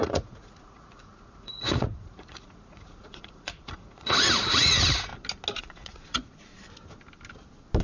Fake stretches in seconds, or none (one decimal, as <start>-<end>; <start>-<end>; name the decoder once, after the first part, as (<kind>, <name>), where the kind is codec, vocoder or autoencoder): 0.0-5.1 (vocoder, Vocos); 5.6-6.5

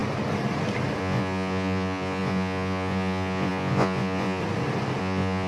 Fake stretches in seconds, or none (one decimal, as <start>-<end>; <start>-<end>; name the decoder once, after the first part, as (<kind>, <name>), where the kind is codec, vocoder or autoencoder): 1.0-4.4 (vocoder, Vocos); 5.0-5.5

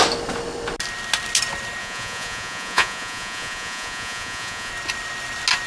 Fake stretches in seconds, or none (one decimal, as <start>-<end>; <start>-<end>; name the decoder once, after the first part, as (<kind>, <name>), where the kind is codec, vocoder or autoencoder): 1.8-4.7 (vocoder, Vocos)

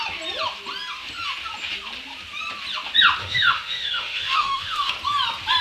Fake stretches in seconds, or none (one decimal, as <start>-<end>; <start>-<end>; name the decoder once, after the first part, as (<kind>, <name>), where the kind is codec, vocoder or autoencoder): 3.2-4.9 (autoencoder, DAC-VAE)

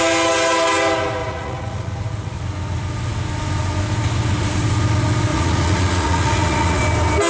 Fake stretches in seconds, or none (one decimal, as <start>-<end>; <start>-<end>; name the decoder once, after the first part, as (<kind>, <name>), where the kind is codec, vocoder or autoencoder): 1.2-2.4 (vocoder, Vocos); 5.3-6.8

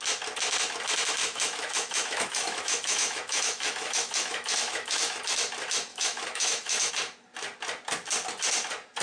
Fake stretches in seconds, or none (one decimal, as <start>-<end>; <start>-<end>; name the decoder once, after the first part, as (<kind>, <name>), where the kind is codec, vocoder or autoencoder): 1.2-5.2 (autoencoder, DAC-VAE); 5.9-6.9

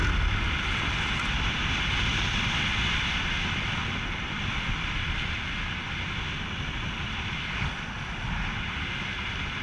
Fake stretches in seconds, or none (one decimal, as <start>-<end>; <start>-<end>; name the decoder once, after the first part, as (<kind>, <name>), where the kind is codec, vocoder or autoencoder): 2.1-3.2 (vocoder, BigVGAN v2)

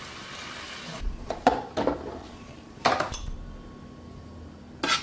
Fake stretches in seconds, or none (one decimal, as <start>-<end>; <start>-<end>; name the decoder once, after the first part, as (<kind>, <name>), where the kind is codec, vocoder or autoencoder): 0.9-1.5 (vocoder, Vocos); 2.2-2.8